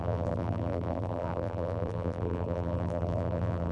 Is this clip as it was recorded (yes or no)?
no